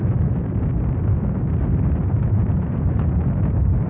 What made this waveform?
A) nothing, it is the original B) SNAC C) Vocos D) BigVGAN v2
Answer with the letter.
A